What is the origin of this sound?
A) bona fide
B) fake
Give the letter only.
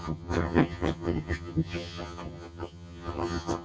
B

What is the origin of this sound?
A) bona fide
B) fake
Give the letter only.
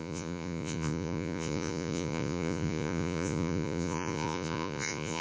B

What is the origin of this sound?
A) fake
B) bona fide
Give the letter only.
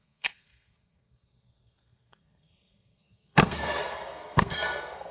A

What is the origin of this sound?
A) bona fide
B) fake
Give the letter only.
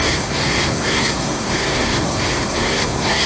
B